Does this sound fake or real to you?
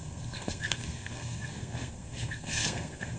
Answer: fake